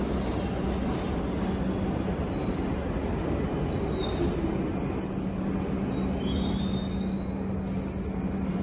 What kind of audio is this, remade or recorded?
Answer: recorded